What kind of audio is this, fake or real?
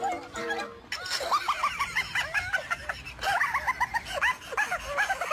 real